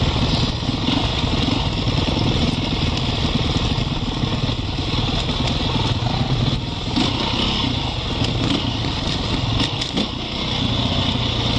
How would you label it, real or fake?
real